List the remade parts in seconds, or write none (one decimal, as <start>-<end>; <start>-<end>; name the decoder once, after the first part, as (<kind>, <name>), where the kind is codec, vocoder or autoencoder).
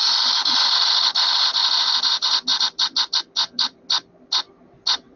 none